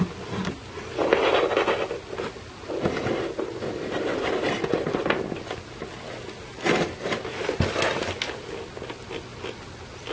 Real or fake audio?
real